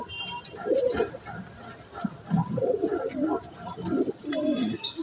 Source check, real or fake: real